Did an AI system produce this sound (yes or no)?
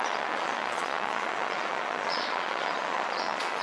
yes